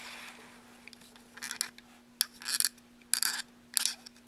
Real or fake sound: real